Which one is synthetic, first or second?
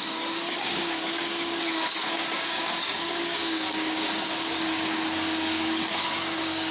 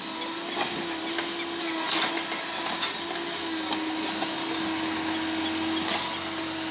first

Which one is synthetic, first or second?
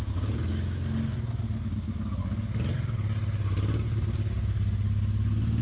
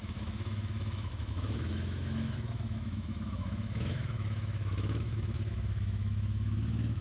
second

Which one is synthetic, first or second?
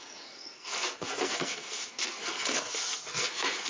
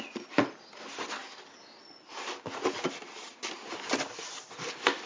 first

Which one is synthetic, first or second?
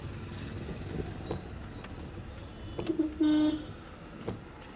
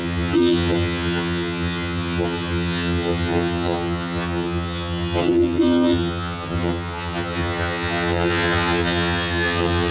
second